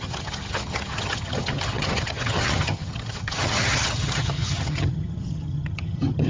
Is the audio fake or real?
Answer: fake